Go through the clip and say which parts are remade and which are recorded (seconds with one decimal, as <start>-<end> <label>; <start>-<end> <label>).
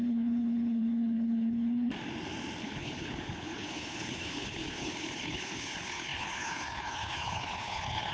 0.0-1.9 remade; 1.9-2.6 recorded; 2.6-8.1 remade